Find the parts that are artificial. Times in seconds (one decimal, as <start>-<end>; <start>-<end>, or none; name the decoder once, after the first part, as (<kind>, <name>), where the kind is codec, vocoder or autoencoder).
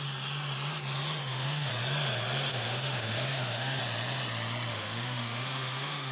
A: 1.2-1.7 (autoencoder, DAC-VAE); 2.5-3.8; 4.7-6.1